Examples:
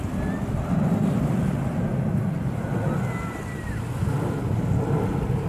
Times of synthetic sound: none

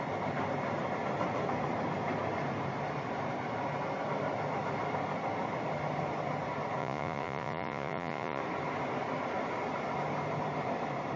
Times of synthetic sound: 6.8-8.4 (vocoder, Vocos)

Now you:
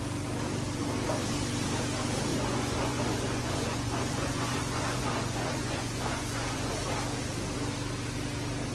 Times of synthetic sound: 2.3-6.7 (vocoder, Vocos)